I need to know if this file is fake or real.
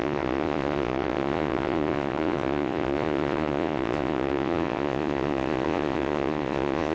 fake